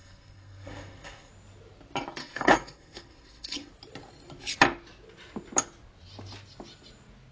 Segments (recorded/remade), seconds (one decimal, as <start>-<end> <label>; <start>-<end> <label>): 0.0-1.3 remade; 1.3-2.2 recorded; 2.2-3.7 remade; 3.7-7.3 recorded